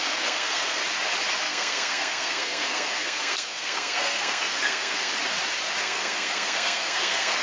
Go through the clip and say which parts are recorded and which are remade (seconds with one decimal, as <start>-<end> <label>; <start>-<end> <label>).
0.0-0.8 remade; 0.8-1.4 recorded; 1.4-5.1 remade; 5.1-5.8 recorded; 5.8-7.4 remade